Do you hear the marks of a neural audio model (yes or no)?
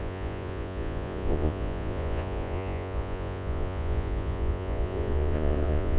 yes